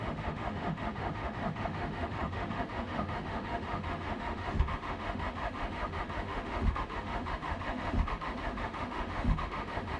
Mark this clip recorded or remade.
remade